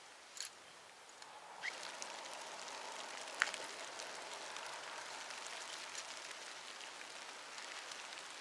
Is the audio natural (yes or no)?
yes